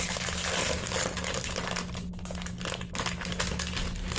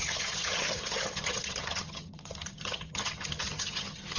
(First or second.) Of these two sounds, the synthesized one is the second